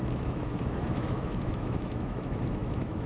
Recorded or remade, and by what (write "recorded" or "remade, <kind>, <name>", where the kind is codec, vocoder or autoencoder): remade, autoencoder, DAC-VAE